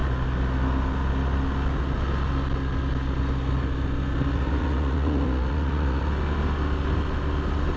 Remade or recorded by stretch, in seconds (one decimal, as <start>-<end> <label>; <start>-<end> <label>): 0.0-4.3 recorded; 4.3-6.1 remade; 6.1-7.8 recorded